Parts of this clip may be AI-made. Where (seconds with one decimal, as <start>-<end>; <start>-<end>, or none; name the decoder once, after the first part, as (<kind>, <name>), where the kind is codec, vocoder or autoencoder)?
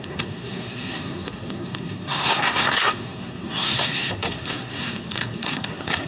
0.0-6.1 (codec, SNAC)